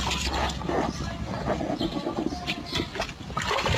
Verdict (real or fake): real